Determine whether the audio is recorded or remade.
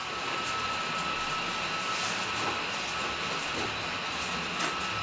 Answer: recorded